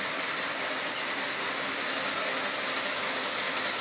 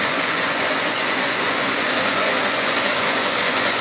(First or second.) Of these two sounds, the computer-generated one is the second